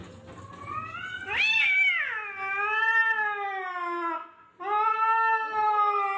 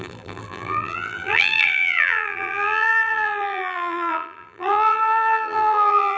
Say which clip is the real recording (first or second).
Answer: first